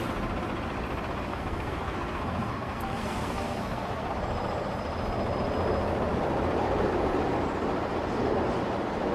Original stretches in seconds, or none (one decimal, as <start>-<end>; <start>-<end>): 0.0-1.3; 4.1-9.1